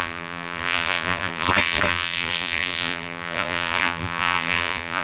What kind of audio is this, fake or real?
fake